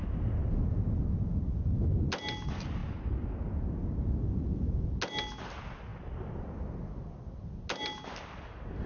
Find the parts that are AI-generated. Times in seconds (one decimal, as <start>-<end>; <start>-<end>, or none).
none